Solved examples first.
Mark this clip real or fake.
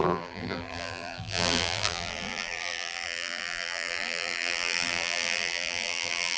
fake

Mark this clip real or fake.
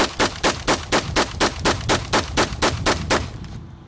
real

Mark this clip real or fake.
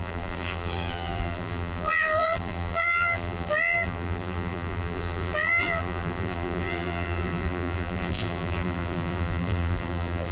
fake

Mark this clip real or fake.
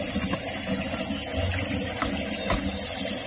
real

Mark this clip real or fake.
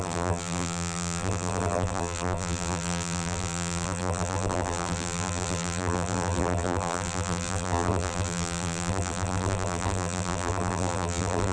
fake